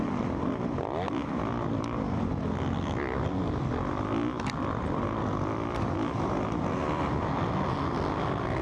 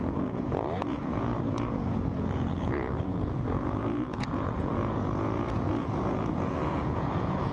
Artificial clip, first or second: second